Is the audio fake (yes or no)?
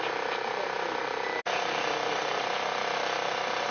no